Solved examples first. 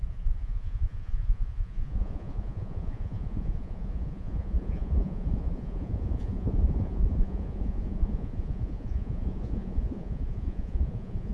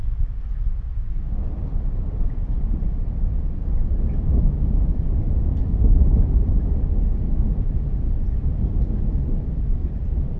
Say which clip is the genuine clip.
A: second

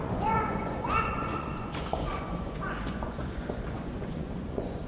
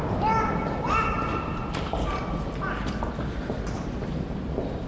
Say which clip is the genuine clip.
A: second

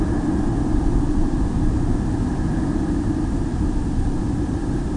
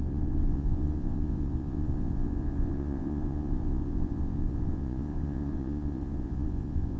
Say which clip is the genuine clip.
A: first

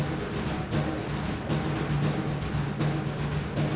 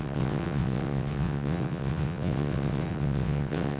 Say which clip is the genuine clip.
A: first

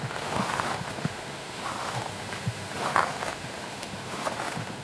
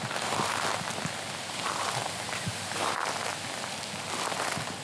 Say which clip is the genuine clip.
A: second